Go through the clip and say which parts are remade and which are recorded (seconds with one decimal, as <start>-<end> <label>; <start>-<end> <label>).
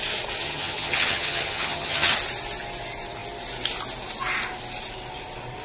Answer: 0.0-0.4 recorded; 0.4-2.1 remade; 2.1-5.6 recorded